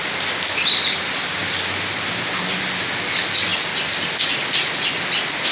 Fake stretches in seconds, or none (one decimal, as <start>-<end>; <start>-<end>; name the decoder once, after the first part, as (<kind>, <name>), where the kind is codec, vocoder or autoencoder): 3.5-4.1 (vocoder, BigVGAN v2)